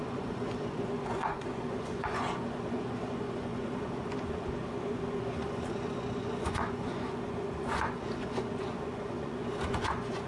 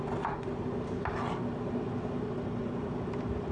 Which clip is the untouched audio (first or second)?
second